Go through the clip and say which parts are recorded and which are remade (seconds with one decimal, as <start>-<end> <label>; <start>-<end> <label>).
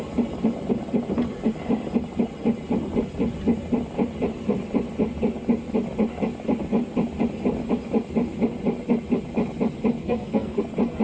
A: 0.0-10.0 recorded; 10.0-10.6 remade; 10.6-11.0 recorded